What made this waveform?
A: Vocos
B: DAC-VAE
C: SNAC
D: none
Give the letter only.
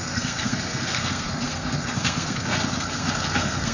C